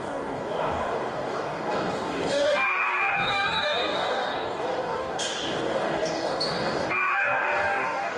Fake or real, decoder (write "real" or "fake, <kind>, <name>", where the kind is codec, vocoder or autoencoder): fake, codec, DAC